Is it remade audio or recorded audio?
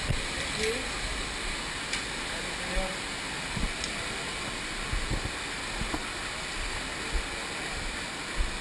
recorded